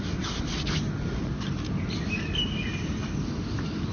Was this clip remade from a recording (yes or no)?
no